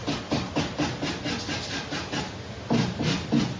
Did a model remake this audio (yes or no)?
no